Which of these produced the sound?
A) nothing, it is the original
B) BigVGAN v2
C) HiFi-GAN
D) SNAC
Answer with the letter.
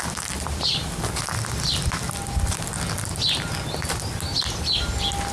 A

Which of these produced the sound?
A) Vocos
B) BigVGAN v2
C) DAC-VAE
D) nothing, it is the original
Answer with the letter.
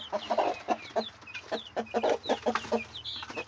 D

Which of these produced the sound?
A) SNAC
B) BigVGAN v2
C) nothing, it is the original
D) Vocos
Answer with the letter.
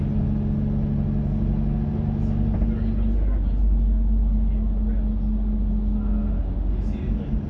C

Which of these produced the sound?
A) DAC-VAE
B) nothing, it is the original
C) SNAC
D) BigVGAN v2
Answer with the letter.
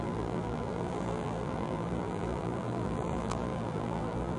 D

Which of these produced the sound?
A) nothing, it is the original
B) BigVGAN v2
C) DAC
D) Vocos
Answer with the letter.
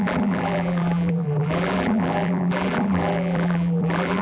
B